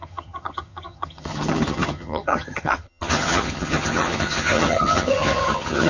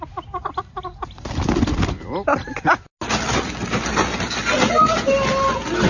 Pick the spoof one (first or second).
first